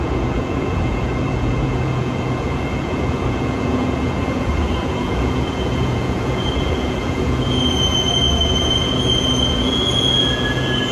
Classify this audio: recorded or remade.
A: remade